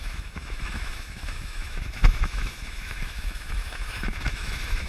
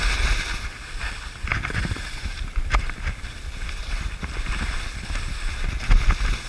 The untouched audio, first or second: second